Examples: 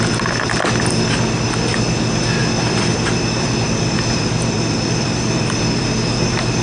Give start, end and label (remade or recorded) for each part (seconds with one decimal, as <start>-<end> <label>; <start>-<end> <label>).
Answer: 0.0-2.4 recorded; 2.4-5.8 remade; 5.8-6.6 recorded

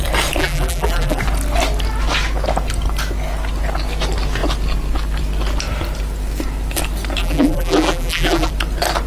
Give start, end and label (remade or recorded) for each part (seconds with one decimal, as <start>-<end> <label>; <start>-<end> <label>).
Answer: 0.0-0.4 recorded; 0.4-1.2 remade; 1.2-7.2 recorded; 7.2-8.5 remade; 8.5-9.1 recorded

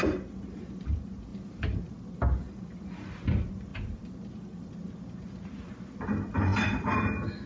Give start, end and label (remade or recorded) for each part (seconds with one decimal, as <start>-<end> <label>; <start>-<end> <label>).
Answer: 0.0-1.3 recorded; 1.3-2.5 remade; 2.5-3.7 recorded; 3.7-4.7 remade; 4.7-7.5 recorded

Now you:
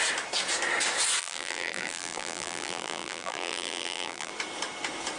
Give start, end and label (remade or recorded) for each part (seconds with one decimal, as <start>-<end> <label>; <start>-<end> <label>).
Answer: 0.0-1.2 recorded; 1.2-4.3 remade; 4.3-5.2 recorded

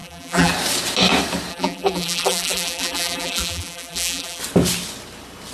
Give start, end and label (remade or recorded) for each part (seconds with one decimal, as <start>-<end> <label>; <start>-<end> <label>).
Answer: 0.0-0.5 remade; 0.5-1.5 recorded; 1.5-4.4 remade; 4.4-5.5 recorded

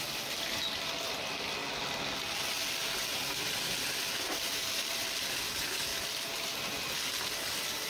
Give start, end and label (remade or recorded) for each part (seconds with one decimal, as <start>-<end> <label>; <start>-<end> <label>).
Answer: 0.0-1.6 remade; 1.6-2.7 recorded; 2.7-7.9 remade